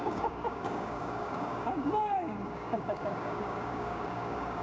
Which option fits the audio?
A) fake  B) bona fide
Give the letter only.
A